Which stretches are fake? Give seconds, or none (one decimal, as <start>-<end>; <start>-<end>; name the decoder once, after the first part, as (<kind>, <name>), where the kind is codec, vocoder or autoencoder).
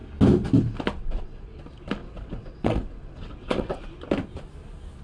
1.0-1.6 (vocoder, WaveNeXt); 2.0-3.8